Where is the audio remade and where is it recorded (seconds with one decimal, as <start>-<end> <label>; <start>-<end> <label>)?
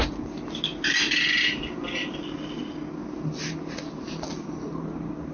0.0-5.3 recorded